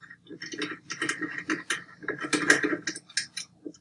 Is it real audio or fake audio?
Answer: real